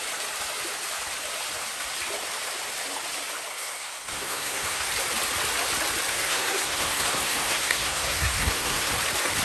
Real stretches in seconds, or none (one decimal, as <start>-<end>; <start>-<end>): 0.0-3.5; 4.9-6.1; 8.9-9.4